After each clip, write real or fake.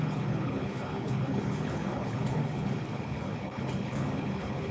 fake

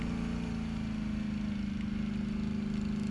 real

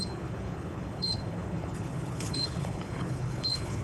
fake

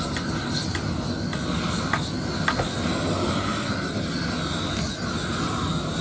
real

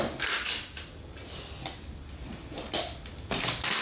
real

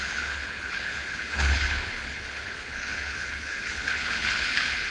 fake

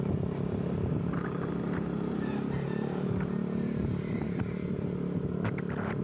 real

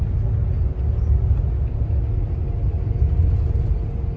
real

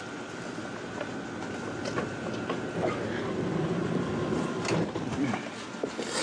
real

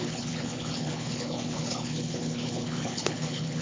fake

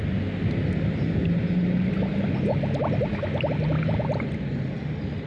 real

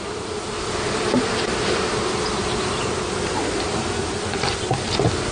real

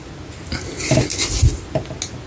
real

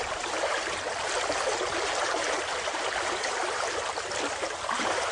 real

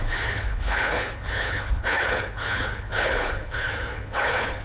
fake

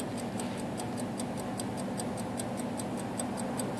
real